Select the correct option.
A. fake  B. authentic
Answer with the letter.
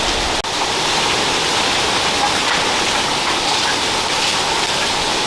B